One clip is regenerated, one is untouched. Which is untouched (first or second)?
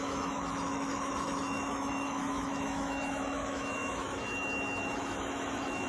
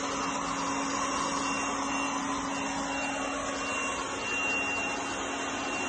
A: second